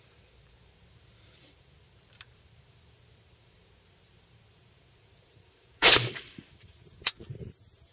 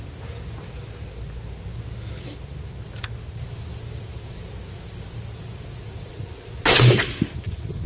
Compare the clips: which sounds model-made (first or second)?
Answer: first